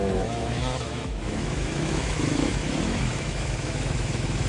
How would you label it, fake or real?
fake